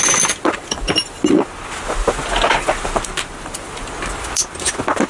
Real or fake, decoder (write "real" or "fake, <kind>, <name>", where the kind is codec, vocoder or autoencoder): real